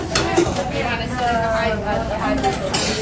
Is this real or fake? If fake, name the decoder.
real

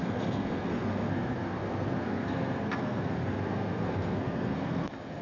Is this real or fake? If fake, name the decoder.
fake, codec, SNAC